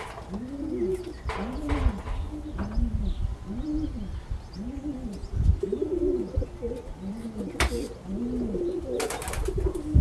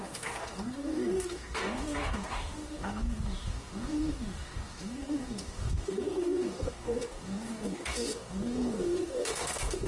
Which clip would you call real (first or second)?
first